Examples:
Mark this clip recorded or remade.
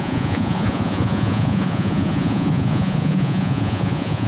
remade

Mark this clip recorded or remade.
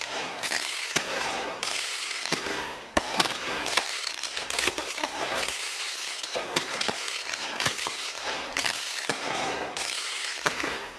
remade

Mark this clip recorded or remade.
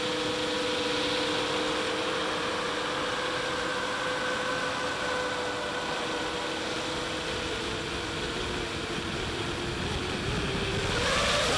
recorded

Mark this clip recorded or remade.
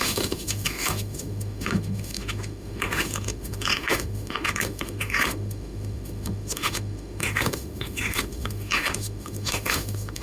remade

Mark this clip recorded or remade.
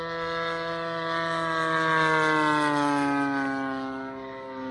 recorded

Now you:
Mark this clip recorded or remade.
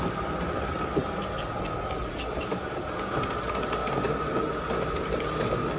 recorded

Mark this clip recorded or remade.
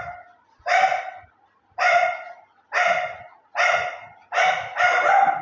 recorded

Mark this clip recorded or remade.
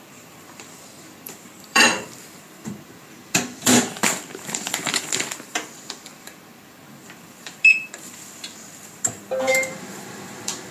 remade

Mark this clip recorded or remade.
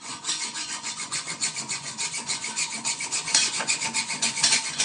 remade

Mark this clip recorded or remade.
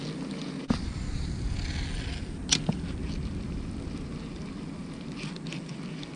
recorded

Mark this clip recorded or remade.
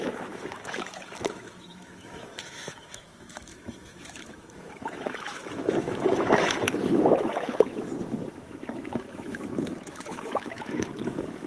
remade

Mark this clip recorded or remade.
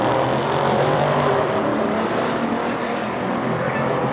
remade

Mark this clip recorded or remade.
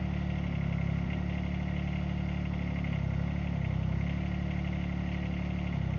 recorded